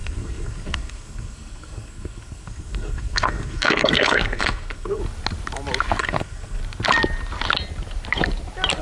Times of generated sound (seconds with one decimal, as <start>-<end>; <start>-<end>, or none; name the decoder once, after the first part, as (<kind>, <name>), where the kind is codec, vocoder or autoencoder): 0.0-5.0 (codec, SNAC); 6.0-6.6